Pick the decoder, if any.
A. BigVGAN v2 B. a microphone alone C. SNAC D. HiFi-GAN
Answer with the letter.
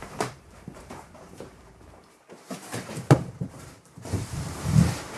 A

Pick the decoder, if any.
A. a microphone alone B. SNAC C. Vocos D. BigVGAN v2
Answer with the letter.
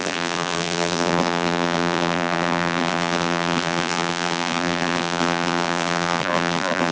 D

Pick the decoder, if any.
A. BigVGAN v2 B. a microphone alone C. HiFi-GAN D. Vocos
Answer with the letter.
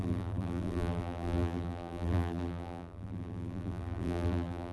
A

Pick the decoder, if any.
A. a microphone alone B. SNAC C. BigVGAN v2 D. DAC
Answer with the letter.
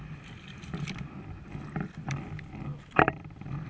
C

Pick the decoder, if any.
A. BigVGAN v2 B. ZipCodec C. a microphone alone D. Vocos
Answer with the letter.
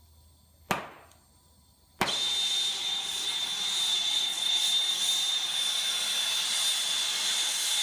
C